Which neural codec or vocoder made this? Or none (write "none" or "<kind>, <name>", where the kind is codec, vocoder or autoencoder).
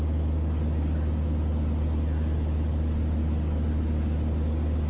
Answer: none